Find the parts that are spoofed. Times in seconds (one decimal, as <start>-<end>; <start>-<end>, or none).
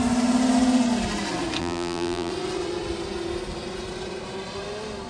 1.6-2.3